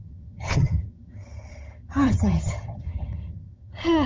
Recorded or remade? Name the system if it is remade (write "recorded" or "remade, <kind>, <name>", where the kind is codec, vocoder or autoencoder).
remade, vocoder, HiFi-GAN